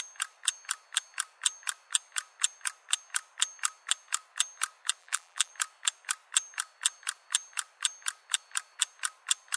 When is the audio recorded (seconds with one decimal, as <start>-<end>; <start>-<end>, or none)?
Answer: 0.0-5.0; 5.5-9.6